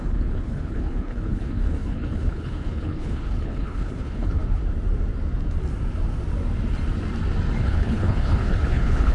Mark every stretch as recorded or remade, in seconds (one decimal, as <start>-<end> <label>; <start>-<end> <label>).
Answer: 0.0-4.4 remade; 4.4-7.6 recorded; 7.6-9.1 remade